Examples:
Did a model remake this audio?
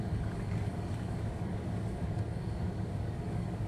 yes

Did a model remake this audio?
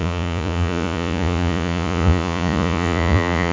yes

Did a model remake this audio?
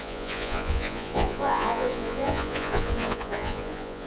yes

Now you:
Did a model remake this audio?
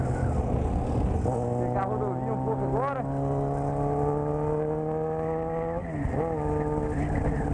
no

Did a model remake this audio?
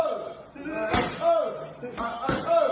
no